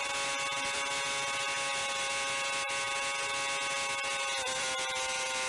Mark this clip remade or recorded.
recorded